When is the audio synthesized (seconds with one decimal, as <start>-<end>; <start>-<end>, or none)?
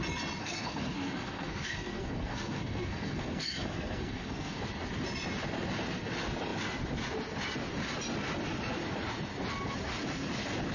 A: 0.4-4.6